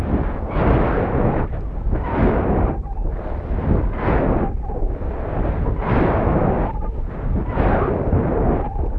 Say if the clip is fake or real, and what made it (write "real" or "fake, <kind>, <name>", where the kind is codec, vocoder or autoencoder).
real